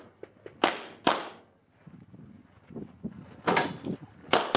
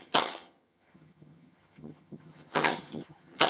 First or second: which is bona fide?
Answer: first